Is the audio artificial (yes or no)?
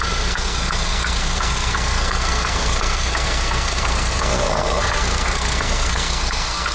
yes